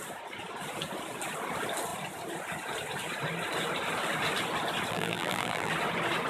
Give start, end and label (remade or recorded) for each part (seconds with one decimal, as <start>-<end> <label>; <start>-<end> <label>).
0.0-4.9 recorded; 4.9-5.7 remade; 5.7-6.3 recorded